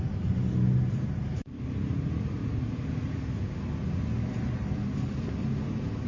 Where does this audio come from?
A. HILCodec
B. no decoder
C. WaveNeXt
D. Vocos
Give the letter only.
B